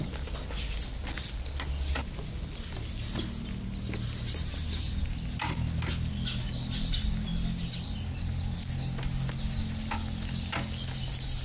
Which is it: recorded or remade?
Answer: recorded